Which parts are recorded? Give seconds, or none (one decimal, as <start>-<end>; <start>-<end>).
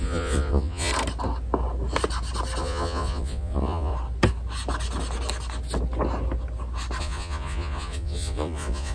0.9-2.6; 3.9-7.0